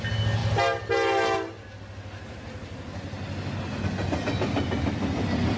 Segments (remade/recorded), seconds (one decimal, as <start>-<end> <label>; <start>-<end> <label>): 0.0-5.6 recorded